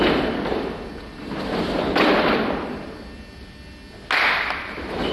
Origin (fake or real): real